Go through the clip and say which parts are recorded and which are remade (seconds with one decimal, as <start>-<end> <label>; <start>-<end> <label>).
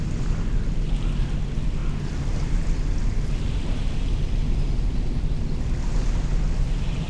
0.0-7.1 recorded